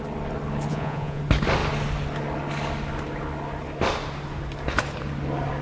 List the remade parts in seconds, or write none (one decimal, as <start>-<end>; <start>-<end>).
0.7-1.2